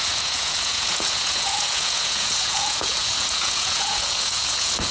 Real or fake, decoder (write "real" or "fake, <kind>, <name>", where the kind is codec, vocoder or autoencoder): fake, vocoder, Vocos